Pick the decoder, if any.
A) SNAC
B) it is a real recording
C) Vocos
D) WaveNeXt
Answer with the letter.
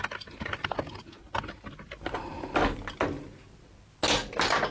B